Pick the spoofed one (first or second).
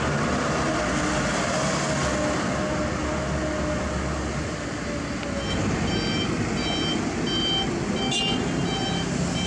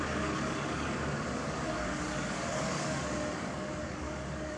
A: second